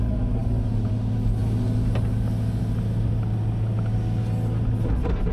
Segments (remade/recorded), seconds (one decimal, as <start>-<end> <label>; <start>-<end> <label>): 0.0-5.3 recorded